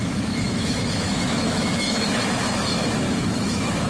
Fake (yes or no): yes